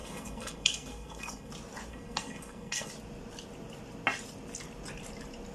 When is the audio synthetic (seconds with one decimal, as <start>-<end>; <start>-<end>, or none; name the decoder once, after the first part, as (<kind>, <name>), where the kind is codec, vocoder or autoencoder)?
0.0-1.5 (codec, SNAC); 1.9-2.9